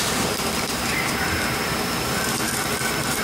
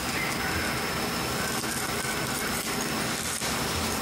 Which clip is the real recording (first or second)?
second